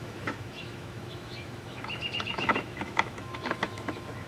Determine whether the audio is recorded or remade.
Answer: remade